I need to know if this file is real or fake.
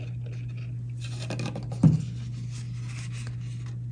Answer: real